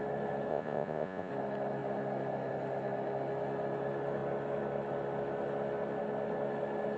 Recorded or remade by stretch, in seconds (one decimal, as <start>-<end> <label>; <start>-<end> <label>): 0.0-0.5 recorded; 0.5-1.3 remade; 1.3-7.0 recorded